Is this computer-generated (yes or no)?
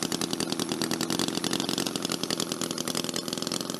no